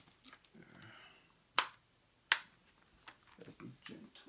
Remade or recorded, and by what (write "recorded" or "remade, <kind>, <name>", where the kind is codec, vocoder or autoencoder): recorded